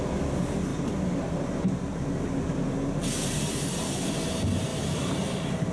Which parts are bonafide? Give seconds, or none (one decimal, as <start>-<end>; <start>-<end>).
0.0-5.7